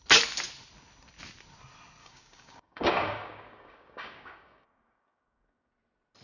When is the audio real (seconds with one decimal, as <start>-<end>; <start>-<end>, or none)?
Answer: 0.0-2.0; 5.7-6.2